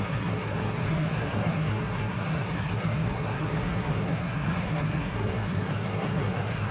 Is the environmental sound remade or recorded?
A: remade